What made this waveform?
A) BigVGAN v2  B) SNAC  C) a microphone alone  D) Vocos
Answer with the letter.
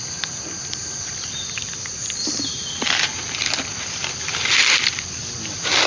A